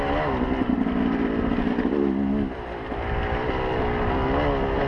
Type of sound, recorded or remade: recorded